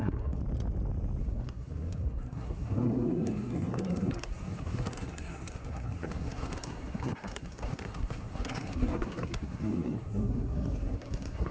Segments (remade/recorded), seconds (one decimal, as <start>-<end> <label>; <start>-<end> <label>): 0.0-0.4 remade; 0.4-1.2 recorded; 1.2-11.5 remade